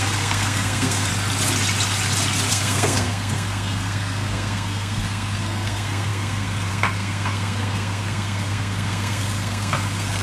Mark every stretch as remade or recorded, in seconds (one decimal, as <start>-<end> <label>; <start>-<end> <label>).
0.0-1.1 remade; 1.1-2.5 recorded; 2.5-10.2 remade